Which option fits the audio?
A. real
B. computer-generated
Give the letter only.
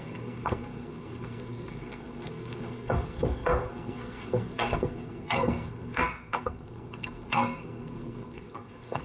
B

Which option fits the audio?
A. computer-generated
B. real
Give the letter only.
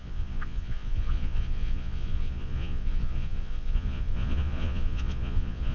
A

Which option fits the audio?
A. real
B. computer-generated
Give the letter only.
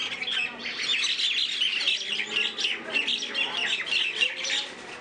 A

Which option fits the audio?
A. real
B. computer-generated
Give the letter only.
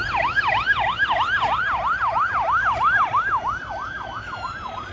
A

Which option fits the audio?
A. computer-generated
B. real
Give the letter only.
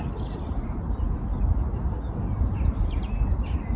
B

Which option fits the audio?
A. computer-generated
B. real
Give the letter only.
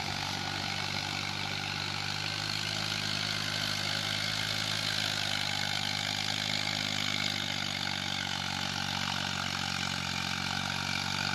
B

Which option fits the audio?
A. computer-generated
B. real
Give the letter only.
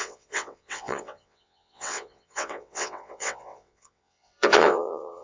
A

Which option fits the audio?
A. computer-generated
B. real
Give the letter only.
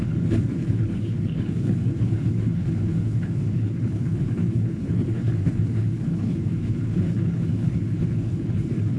A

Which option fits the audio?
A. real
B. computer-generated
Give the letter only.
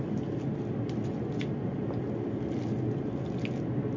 A